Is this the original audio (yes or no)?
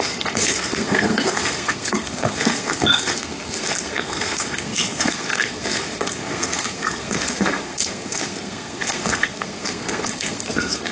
no